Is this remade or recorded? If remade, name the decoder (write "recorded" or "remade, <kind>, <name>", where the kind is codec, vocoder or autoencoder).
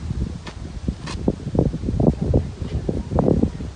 remade, vocoder, BigVGAN v2